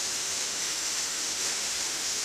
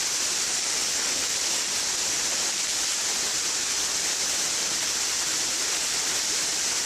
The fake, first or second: first